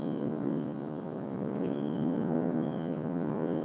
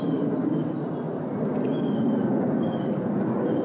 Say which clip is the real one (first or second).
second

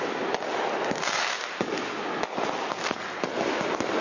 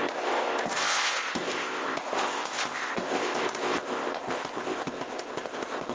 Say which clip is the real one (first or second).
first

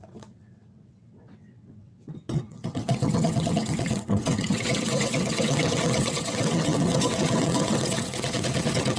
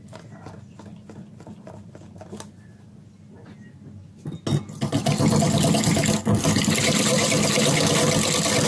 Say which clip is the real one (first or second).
second